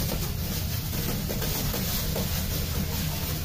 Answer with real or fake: real